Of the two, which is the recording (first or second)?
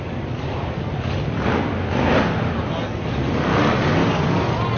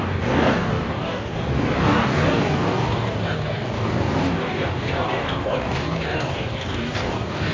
first